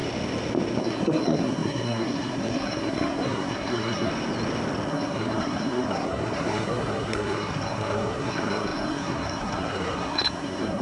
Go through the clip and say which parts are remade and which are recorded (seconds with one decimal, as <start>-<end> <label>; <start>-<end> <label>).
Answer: 0.0-0.8 recorded; 0.8-4.1 remade; 4.1-4.9 recorded; 4.9-10.8 remade